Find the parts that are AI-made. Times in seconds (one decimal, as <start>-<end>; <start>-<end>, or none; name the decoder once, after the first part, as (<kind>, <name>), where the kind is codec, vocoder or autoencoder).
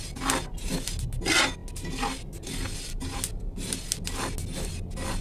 none